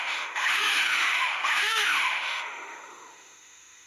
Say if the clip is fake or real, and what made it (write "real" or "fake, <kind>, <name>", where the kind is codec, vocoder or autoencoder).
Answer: fake, autoencoder, DAC-VAE